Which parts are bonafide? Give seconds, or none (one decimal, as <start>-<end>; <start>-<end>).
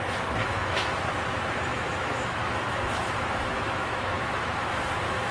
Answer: 0.0-0.4; 0.9-1.7